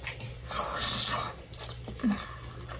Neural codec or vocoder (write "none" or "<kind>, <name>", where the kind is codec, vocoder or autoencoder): none